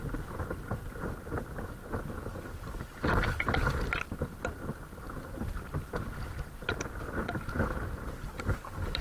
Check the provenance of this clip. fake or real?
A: real